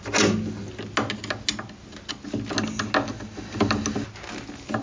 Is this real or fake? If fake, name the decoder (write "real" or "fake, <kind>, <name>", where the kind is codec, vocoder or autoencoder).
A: real